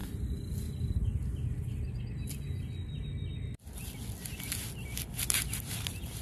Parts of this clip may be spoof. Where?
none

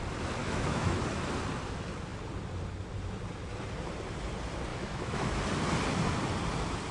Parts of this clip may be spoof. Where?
0.4-1.0 (autoencoder, DAC-VAE); 4.7-5.4

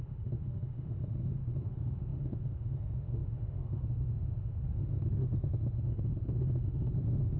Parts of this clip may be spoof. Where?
0.0-7.4 (autoencoder, DAC-VAE)

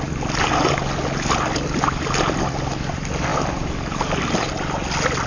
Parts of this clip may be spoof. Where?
none

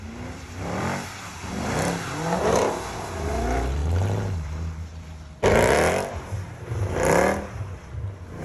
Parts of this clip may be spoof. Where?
none

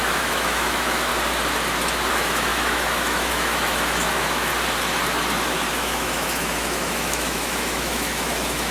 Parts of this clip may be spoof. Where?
0.0-1.1 (autoencoder, DAC-VAE); 2.1-4.5; 5.7-8.7

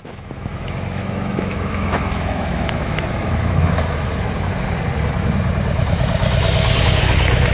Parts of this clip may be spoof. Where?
0.0-4.1 (autoencoder, DAC-VAE); 6.8-7.5